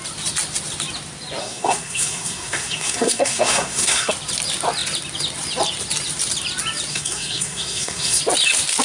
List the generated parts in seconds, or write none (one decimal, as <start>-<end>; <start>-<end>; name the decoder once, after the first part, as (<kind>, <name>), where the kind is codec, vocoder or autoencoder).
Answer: 1.4-4.1 (codec, SNAC); 6.9-8.2